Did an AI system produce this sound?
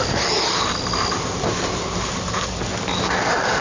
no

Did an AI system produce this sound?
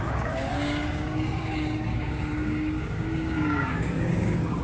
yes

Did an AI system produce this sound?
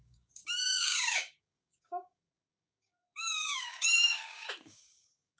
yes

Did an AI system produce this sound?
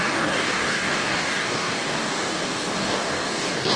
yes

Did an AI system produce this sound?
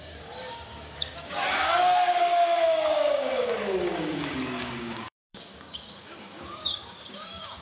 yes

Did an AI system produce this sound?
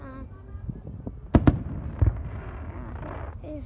no